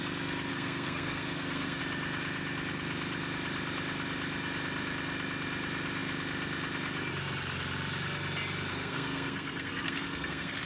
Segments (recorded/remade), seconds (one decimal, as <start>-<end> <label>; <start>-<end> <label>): 0.0-0.5 recorded; 0.5-1.8 remade; 1.8-8.7 recorded; 8.7-10.6 remade